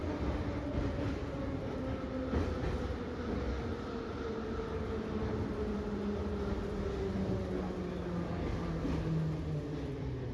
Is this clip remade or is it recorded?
recorded